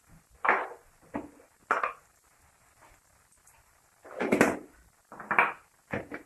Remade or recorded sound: recorded